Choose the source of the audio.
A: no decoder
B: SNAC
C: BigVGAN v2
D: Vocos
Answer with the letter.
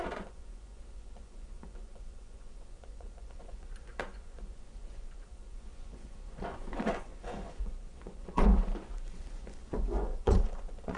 D